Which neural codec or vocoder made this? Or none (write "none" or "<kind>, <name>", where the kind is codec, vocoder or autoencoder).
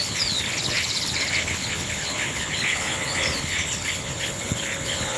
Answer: codec, HILCodec